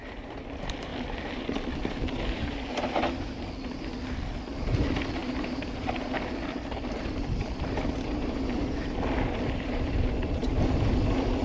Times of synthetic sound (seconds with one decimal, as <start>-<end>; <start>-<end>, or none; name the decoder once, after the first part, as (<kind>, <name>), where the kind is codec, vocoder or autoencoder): 0.0-0.9 (vocoder, BigVGAN v2); 2.8-11.4